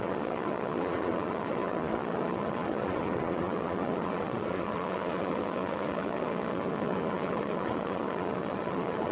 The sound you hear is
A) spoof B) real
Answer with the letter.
A